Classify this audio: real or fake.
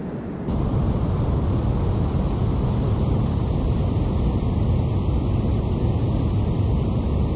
real